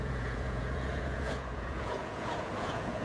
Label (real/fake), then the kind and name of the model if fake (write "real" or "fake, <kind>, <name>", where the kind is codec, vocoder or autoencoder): fake, vocoder, Vocos